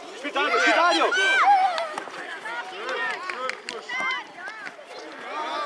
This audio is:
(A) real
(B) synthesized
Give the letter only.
A